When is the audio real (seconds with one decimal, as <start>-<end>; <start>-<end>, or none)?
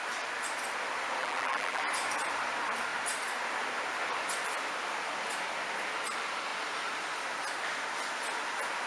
0.0-1.2; 1.8-8.9